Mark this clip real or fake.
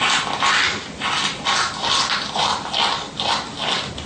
real